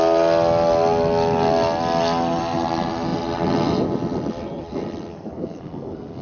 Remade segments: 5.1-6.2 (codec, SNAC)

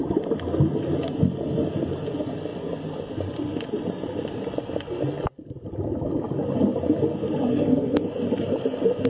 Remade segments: 7.5-8.1 (codec, SNAC)

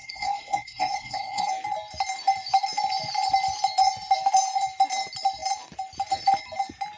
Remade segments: 0.0-1.5 (codec, SNAC)

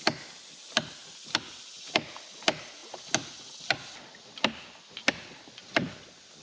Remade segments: none

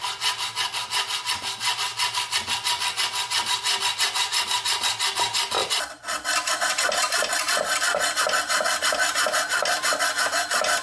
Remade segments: none